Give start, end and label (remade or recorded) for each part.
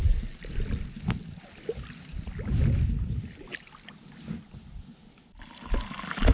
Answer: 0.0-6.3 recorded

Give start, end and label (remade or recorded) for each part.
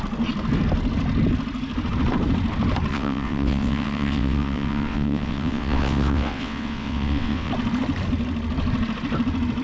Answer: 0.0-2.9 recorded; 2.9-7.5 remade; 7.5-9.6 recorded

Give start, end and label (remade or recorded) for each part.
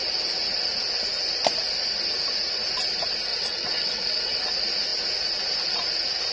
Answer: 0.0-3.3 recorded; 3.3-4.4 remade; 4.4-6.3 recorded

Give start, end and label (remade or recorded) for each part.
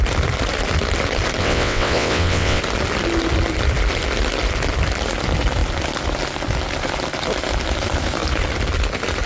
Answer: 0.0-1.4 recorded; 1.4-2.6 remade; 2.6-9.3 recorded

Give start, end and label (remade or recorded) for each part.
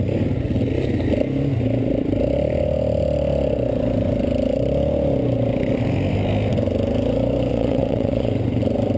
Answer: 0.0-7.5 recorded; 7.5-8.3 remade; 8.3-9.0 recorded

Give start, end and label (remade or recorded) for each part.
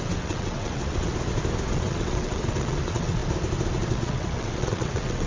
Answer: 0.0-1.1 remade; 1.1-1.7 recorded; 1.7-3.2 remade; 3.2-3.8 recorded; 3.8-5.3 remade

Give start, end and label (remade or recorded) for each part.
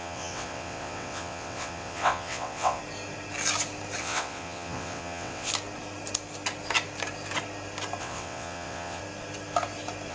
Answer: 0.0-2.8 remade; 2.8-4.0 recorded; 4.0-5.5 remade; 5.5-8.0 recorded; 8.0-9.0 remade; 9.0-10.1 recorded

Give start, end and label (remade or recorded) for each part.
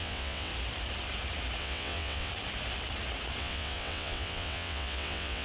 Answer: 0.0-0.5 remade; 0.5-1.6 recorded; 1.6-2.3 remade; 2.3-3.4 recorded; 3.4-5.4 remade